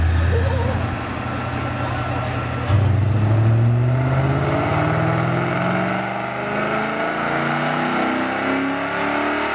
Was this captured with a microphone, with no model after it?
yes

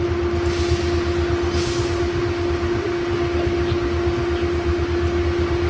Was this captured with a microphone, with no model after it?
yes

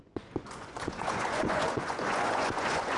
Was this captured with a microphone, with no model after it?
no